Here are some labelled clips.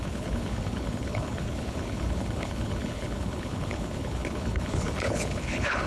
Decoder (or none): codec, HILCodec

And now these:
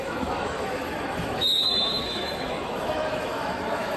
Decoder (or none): autoencoder, DAC-VAE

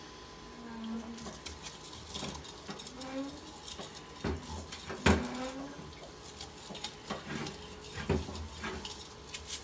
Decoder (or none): none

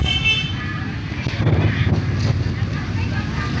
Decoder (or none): none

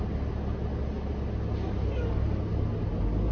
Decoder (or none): none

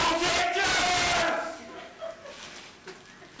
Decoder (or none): none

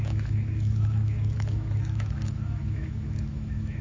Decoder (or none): autoencoder, DAC-VAE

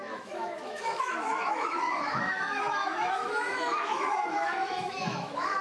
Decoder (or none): autoencoder, DAC-VAE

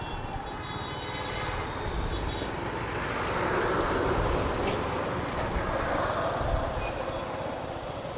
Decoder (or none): none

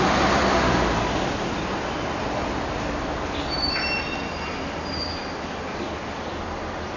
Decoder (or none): none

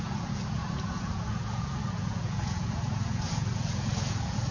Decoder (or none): vocoder, Vocos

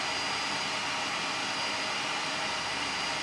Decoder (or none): none